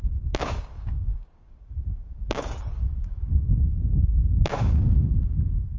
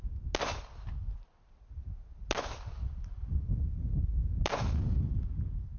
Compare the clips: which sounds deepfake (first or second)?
first